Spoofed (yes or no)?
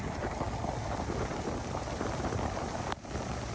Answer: no